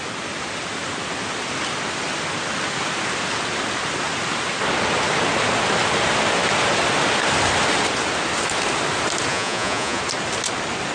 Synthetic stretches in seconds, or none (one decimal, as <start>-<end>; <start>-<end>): 9.3-10.0